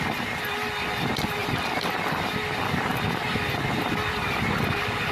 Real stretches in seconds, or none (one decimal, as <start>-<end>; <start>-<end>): 0.0-5.1

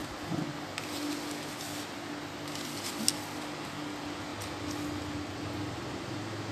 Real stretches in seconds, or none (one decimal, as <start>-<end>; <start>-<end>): 0.0-6.5

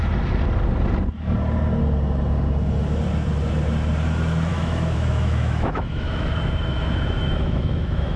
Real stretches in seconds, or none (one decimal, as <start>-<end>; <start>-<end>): 0.0-4.5

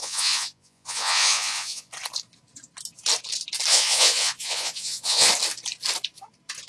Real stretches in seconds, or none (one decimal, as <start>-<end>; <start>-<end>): 1.9-3.7; 5.3-6.7

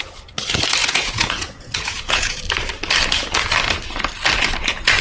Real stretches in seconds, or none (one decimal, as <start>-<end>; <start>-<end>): 0.0-0.8; 2.4-5.0

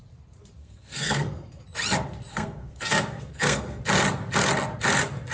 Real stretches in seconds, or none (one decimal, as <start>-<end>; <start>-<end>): 0.0-0.6; 1.6-2.3; 3.8-5.3

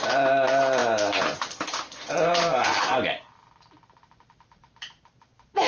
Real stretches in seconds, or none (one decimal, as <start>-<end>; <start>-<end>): 2.7-4.0